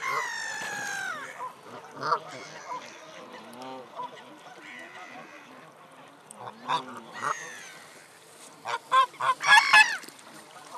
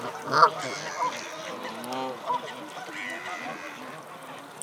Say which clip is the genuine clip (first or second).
second